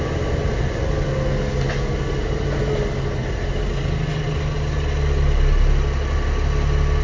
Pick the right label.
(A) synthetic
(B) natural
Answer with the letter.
B